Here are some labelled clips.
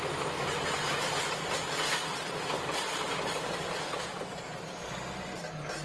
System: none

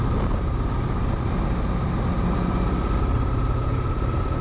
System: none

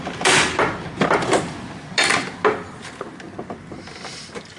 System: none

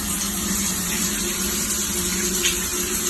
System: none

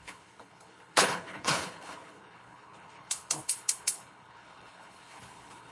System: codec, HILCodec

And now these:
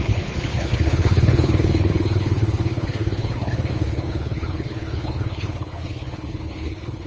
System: codec, HILCodec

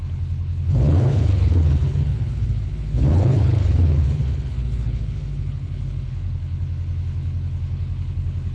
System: codec, HILCodec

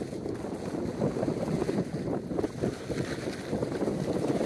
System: none